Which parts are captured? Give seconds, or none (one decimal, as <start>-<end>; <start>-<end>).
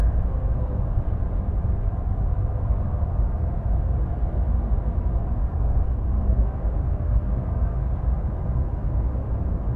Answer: 1.0-5.4; 7.9-9.8